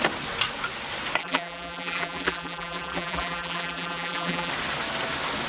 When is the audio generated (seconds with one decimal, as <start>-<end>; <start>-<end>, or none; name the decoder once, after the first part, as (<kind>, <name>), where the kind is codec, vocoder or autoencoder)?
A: 1.2-4.5 (vocoder, BigVGAN v2)